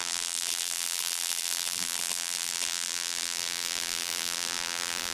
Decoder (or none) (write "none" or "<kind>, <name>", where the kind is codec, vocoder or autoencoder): vocoder, BigVGAN v2